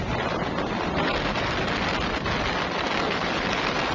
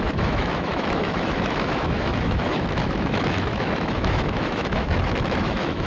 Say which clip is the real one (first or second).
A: first